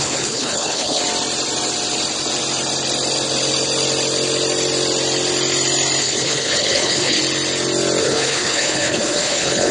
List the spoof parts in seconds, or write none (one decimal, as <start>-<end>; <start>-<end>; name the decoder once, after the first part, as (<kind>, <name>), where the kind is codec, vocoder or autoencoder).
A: 0.0-1.0 (codec, HILCodec); 6.0-7.2; 8.0-9.7